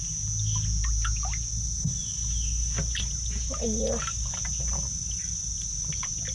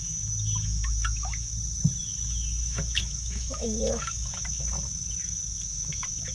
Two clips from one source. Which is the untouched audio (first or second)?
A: first